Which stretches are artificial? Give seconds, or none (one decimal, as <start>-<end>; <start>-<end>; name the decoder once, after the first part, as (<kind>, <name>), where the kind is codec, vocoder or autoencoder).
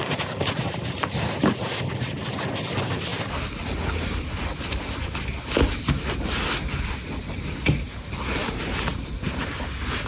8.4-9.4 (vocoder, BigVGAN v2)